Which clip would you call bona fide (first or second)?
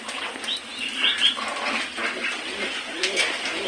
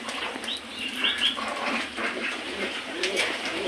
first